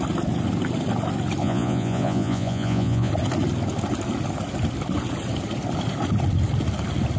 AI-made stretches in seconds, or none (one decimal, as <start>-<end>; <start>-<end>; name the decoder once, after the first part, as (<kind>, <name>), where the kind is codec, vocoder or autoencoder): 1.4-3.1 (vocoder, Vocos)